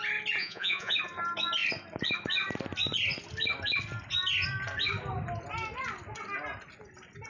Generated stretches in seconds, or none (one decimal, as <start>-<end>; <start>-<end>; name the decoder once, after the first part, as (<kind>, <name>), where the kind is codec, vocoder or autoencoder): 0.4-0.9 (vocoder, Vocos)